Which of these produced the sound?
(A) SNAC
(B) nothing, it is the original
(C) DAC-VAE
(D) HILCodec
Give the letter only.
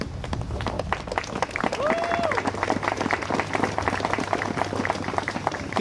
B